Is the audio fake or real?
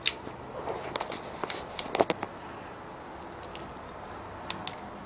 real